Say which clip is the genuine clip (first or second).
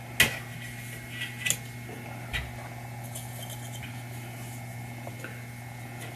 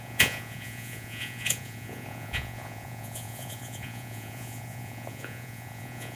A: first